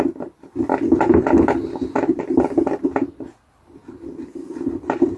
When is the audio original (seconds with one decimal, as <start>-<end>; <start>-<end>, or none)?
0.0-5.2